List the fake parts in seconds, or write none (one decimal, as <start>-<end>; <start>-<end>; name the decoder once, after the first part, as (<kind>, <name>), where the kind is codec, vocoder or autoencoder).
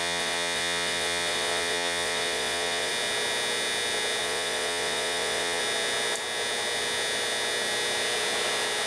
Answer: 0.0-2.9 (vocoder, Vocos); 4.2-5.6